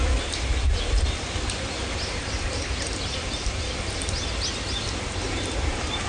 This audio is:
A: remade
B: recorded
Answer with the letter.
B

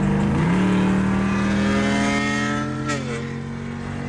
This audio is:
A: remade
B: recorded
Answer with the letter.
B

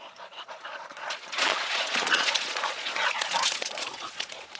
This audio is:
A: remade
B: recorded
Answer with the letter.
A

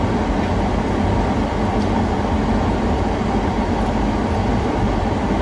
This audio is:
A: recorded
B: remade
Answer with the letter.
A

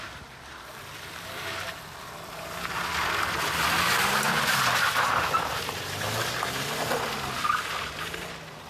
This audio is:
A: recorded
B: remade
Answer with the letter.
A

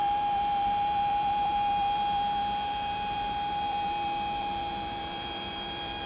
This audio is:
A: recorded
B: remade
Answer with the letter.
B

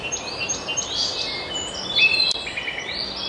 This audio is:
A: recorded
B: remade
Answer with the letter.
A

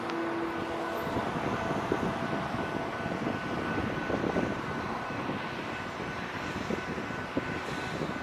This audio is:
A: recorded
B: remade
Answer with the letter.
A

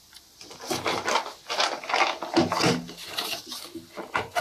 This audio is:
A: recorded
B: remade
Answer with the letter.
A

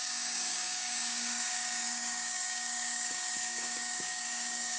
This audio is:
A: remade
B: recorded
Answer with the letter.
A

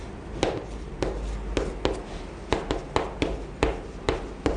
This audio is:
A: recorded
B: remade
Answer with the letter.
A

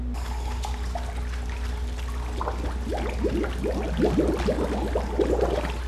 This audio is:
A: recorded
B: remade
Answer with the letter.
A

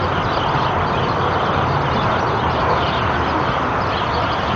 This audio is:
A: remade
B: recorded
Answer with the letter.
B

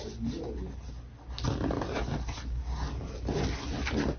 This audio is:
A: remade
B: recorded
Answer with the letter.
B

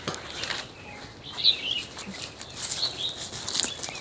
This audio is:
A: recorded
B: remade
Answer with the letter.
A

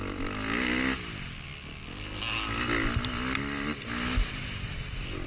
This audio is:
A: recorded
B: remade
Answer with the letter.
A